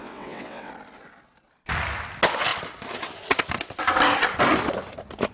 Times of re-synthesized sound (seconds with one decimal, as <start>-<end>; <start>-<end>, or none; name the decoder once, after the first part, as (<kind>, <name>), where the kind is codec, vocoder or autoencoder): 0.0-0.7 (vocoder, WaveNeXt)